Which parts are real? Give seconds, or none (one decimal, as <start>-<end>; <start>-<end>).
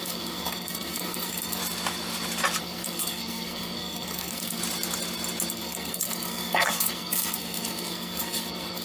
1.6-2.6; 4.6-5.5